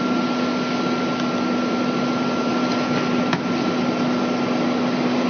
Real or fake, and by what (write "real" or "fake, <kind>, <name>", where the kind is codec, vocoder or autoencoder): real